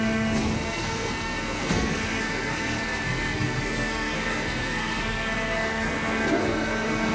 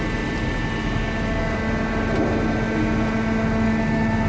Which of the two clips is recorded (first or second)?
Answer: second